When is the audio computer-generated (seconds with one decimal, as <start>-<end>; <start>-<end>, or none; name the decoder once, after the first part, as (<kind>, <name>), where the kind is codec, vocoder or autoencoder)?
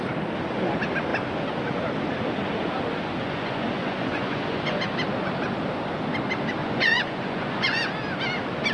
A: 3.2-4.8 (vocoder, Vocos); 6.6-7.9